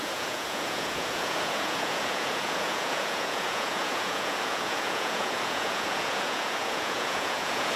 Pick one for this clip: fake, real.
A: fake